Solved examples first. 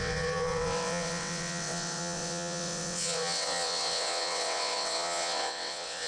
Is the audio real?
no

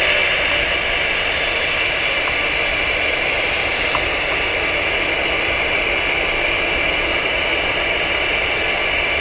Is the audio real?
yes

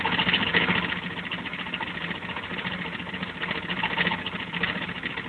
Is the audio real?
yes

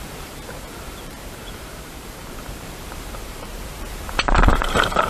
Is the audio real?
no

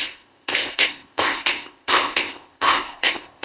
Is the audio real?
no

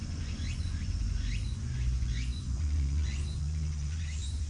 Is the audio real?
no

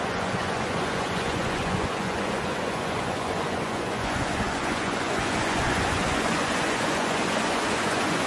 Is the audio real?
no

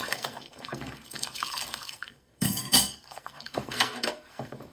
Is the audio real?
no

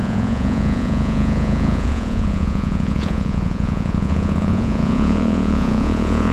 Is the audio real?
no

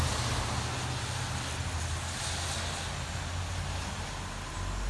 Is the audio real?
yes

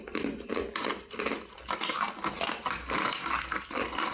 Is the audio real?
yes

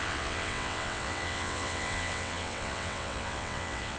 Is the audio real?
no